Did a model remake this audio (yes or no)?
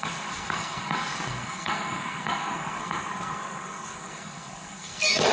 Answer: yes